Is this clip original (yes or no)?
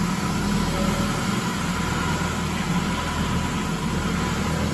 yes